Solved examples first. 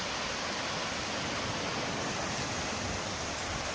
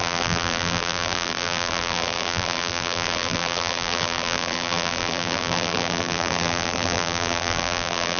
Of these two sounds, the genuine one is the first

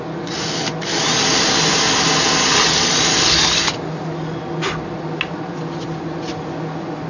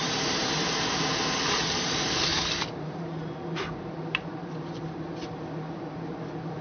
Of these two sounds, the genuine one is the first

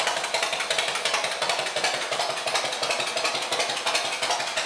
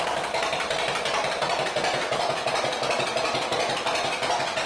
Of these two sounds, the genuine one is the first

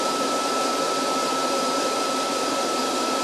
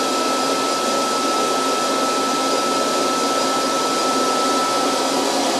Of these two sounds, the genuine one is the second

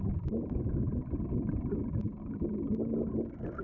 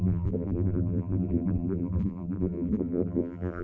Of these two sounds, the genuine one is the first